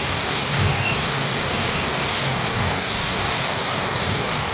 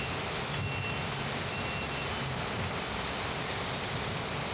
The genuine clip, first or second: second